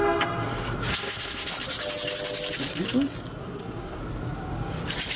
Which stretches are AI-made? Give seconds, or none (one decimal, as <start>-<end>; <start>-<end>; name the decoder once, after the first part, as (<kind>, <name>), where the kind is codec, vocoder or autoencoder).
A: 0.9-1.5 (codec, SNAC); 3.4-4.0